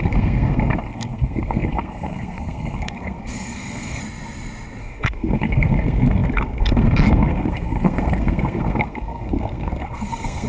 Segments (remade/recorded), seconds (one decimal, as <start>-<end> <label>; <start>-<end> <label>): 0.0-4.0 remade; 4.0-4.8 recorded; 4.8-10.5 remade